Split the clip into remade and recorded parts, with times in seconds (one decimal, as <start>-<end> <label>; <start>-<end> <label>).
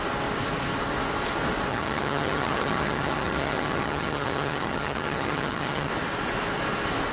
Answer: 0.0-1.7 recorded; 1.7-5.9 remade; 5.9-7.1 recorded